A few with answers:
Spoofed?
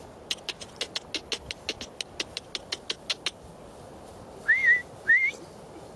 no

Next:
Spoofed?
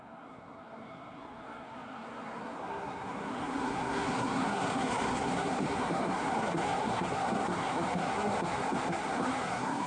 yes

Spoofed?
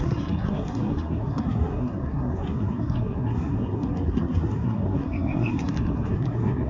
yes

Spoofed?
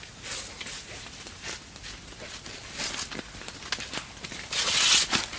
no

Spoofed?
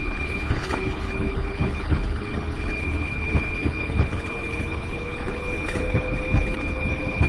yes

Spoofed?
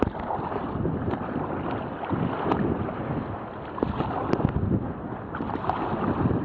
no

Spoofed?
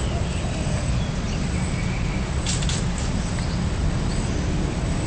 no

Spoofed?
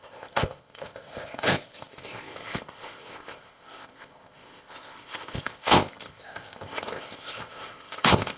yes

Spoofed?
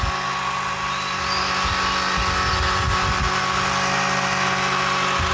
no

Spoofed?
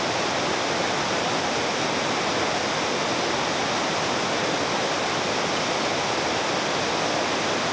no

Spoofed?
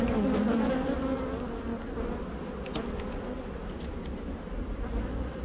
no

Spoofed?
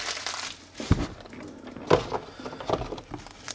no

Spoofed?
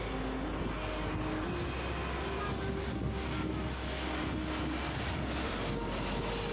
no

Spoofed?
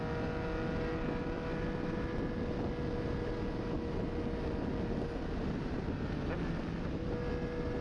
no